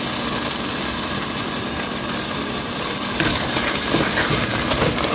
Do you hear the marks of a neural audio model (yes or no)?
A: no